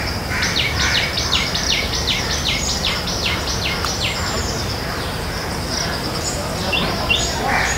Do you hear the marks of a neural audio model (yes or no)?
yes